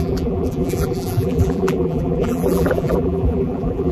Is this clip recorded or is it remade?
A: remade